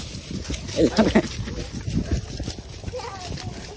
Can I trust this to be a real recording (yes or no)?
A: yes